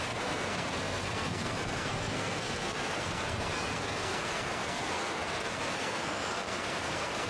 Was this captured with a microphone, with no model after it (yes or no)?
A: no